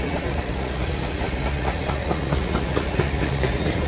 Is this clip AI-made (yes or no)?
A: yes